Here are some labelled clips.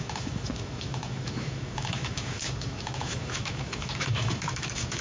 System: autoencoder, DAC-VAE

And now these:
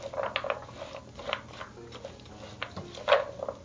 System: none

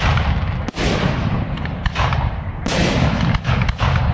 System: none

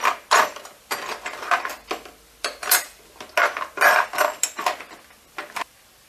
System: none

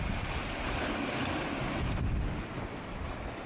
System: none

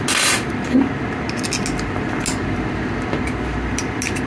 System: none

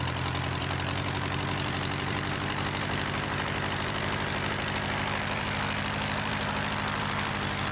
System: vocoder, BigVGAN v2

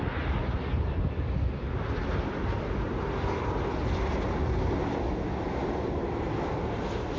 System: none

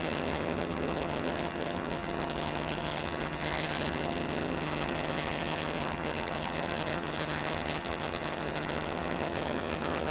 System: vocoder, HiFi-GAN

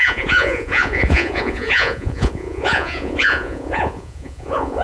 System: vocoder, Vocos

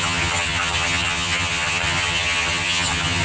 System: vocoder, HiFi-GAN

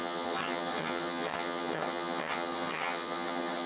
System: vocoder, HiFi-GAN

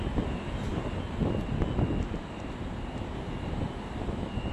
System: none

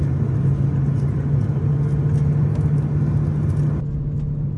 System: none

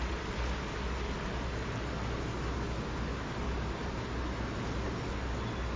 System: none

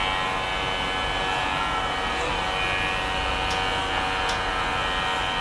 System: none